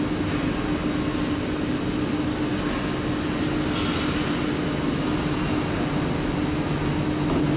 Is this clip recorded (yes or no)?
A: yes